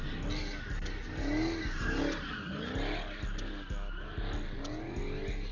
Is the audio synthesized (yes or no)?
no